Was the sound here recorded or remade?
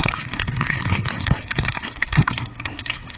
remade